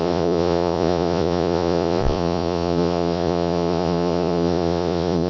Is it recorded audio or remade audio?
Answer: remade